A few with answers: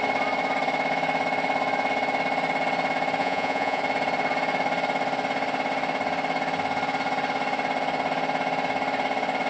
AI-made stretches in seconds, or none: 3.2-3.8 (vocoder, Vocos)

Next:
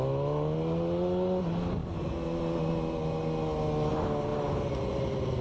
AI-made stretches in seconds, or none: none